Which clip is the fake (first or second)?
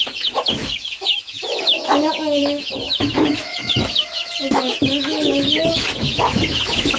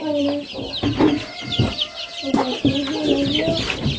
first